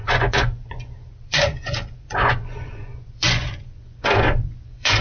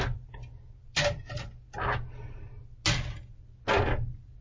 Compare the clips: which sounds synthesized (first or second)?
first